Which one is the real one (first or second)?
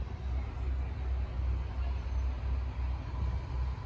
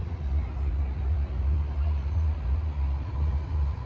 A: first